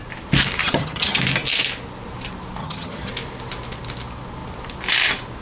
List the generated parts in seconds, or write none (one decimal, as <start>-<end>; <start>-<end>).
0.6-1.2; 2.6-3.1